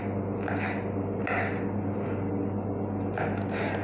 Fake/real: real